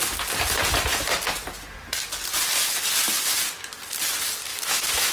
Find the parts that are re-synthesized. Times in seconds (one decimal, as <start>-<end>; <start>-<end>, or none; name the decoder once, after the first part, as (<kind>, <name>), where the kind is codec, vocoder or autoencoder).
4.5-5.1 (autoencoder, DAC-VAE)

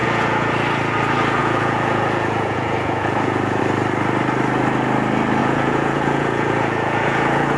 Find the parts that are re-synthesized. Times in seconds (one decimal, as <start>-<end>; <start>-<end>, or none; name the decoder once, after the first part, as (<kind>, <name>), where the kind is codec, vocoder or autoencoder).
0.0-0.5 (vocoder, Vocos); 1.4-3.6; 5.4-7.6

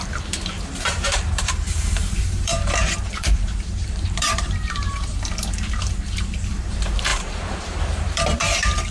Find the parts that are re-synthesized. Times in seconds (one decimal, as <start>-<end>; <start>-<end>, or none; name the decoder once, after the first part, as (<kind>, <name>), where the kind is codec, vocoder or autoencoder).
0.0-8.9 (vocoder, BigVGAN v2)

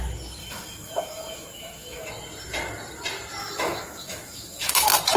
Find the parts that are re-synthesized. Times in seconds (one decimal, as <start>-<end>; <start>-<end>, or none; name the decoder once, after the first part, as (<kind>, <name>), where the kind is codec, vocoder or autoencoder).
0.4-2.1 (autoencoder, DAC-VAE); 3.4-4.7

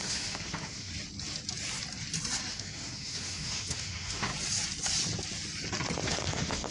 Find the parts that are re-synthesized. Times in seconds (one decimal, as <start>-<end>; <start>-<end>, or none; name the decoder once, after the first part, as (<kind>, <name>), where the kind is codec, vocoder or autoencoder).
0.0-0.9 (autoencoder, DAC-VAE); 2.5-4.3; 6.1-6.7